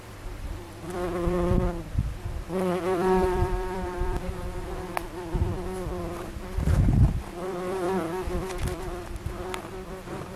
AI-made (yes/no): yes